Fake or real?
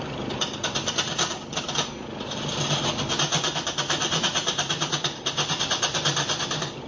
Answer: real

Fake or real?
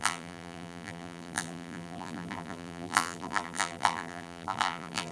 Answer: fake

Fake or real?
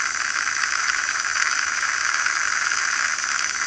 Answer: fake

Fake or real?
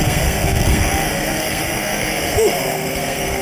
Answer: fake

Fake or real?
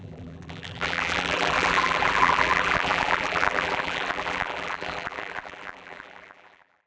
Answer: fake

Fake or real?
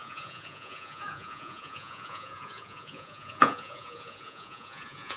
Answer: fake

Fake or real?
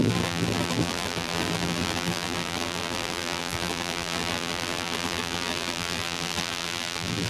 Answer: fake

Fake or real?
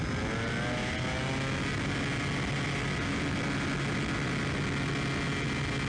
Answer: real